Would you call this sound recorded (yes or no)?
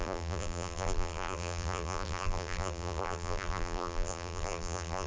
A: no